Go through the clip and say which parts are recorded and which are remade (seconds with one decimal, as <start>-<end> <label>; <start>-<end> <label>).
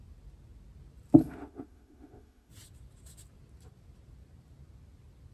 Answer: 0.0-1.2 recorded; 1.2-2.5 remade; 2.5-5.3 recorded